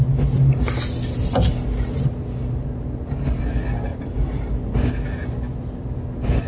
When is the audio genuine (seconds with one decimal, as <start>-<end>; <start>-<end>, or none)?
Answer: 0.0-3.9; 4.4-6.5